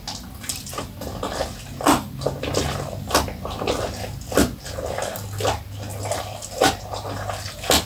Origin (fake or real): real